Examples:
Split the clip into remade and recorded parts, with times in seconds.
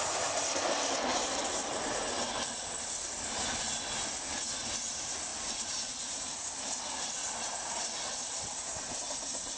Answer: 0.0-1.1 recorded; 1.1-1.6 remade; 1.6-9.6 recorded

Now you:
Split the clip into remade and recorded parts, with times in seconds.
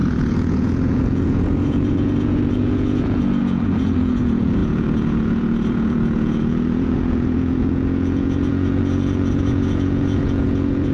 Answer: 0.0-10.9 remade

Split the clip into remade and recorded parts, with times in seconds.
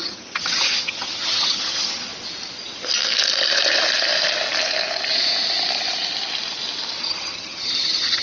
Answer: 0.0-2.1 remade; 2.1-7.0 recorded; 7.0-8.2 remade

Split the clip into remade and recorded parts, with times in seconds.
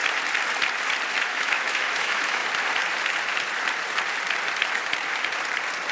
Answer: 0.0-1.2 recorded; 1.2-2.4 remade; 2.4-5.9 recorded